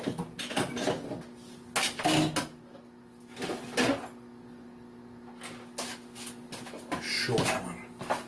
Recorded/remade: recorded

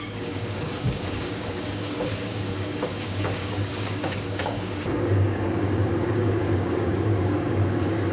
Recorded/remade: remade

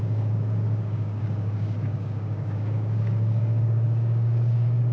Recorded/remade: remade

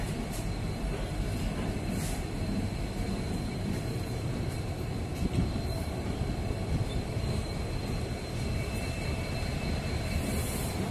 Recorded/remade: remade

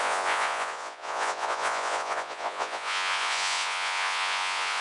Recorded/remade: remade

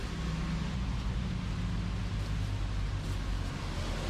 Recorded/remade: recorded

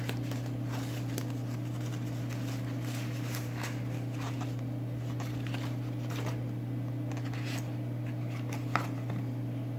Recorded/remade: recorded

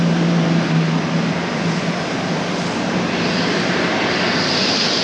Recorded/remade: recorded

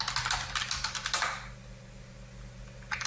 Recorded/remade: recorded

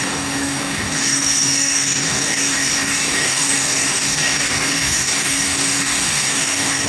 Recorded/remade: remade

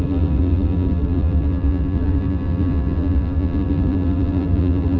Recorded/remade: remade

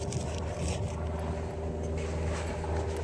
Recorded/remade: recorded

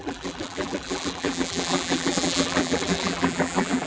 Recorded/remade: remade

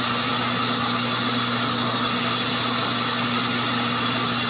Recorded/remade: recorded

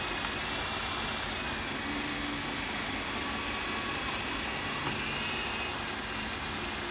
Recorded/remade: recorded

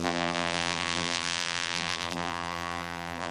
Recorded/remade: remade